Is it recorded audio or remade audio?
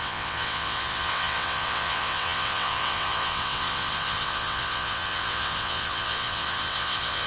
remade